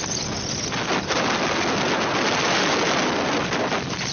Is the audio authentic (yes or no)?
yes